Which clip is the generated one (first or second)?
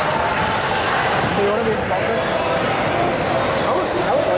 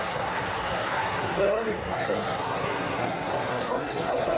second